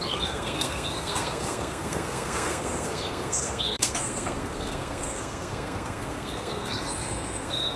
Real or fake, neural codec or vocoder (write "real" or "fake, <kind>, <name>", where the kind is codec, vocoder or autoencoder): fake, codec, SNAC